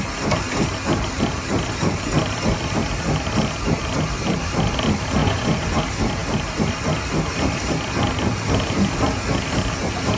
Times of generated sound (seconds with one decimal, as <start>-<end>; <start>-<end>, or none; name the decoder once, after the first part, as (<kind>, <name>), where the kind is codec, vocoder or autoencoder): 5.2-5.8 (vocoder, Vocos)